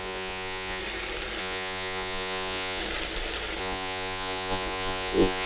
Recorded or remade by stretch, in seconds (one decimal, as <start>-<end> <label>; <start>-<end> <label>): 0.0-0.8 remade; 0.8-1.4 recorded; 1.4-2.8 remade; 2.8-3.6 recorded; 3.6-5.5 remade